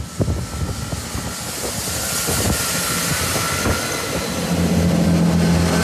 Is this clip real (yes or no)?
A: yes